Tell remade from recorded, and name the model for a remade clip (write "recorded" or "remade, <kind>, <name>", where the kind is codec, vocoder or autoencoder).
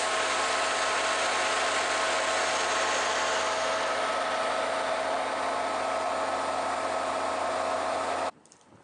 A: recorded